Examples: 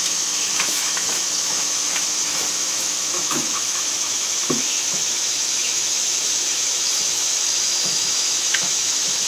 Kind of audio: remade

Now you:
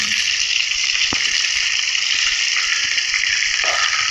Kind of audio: remade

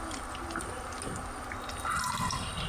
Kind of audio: recorded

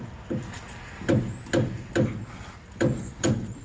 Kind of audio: recorded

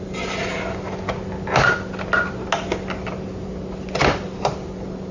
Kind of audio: recorded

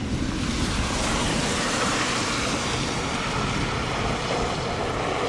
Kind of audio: recorded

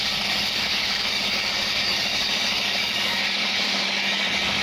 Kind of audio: remade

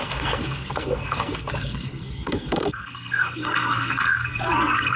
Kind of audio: remade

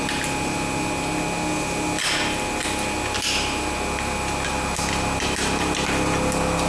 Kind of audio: recorded